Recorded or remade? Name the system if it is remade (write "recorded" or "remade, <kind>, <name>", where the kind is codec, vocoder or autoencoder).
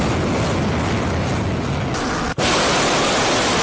recorded